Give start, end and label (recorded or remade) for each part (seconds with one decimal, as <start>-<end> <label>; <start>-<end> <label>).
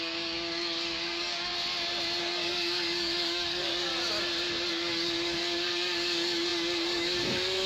0.0-1.5 remade; 1.5-2.2 recorded; 2.2-3.9 remade; 3.9-4.7 recorded; 4.7-7.7 remade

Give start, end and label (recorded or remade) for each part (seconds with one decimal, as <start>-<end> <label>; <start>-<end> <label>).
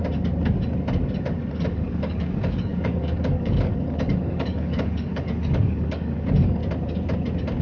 0.0-1.5 recorded; 1.5-6.6 remade; 6.6-7.6 recorded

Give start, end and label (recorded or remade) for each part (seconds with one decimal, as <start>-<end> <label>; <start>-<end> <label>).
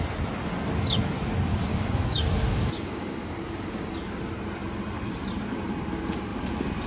0.0-1.5 recorded; 1.5-3.9 remade; 3.9-6.9 recorded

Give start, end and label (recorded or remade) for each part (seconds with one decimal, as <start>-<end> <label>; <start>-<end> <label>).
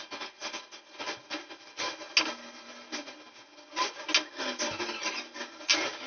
0.0-6.1 recorded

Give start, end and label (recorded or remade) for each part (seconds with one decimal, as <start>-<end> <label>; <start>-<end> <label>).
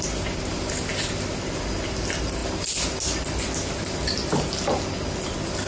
0.0-5.7 recorded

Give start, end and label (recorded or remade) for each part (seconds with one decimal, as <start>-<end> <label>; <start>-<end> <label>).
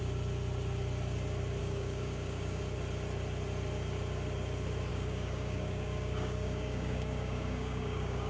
0.0-1.6 recorded; 1.6-2.6 remade; 2.6-4.9 recorded; 4.9-8.3 remade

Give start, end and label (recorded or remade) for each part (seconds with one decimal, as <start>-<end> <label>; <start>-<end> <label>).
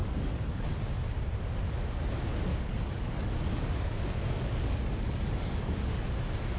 0.0-0.7 remade; 0.7-2.5 recorded; 2.5-6.0 remade; 6.0-6.6 recorded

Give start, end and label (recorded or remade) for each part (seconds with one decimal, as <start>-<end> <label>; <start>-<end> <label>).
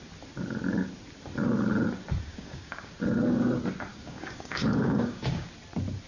0.0-2.3 recorded; 2.3-2.9 remade; 2.9-3.9 recorded; 3.9-5.5 remade; 5.5-6.1 recorded